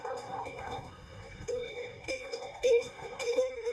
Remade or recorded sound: remade